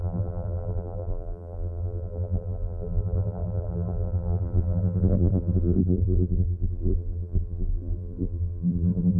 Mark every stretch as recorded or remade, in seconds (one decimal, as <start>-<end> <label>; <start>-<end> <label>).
0.0-9.2 remade